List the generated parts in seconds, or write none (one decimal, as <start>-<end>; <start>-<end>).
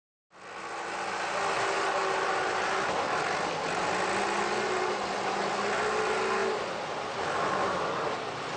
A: none